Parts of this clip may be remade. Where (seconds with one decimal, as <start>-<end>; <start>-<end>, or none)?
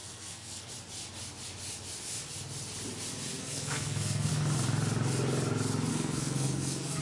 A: 0.0-0.7; 3.3-4.3; 5.9-7.0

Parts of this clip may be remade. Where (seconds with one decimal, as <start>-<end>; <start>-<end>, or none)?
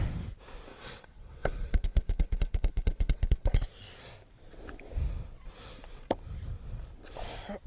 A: 0.7-3.6